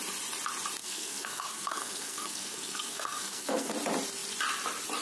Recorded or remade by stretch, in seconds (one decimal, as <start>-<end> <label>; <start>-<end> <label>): 0.0-0.8 recorded; 0.8-3.7 remade; 3.7-5.0 recorded